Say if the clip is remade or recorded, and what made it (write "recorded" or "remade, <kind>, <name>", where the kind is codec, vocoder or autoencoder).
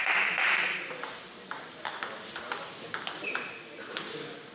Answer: recorded